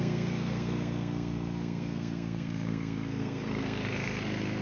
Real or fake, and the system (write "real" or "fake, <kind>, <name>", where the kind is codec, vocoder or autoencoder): fake, codec, SNAC